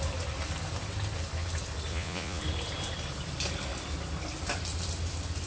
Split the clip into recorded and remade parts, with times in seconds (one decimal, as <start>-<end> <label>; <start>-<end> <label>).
0.0-1.9 recorded; 1.9-2.4 remade; 2.4-5.5 recorded